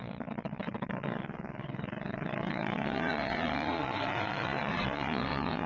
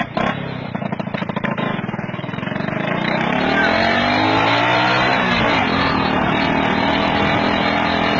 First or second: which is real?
second